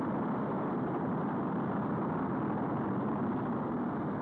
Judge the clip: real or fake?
real